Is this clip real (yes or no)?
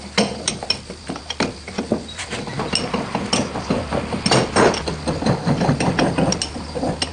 yes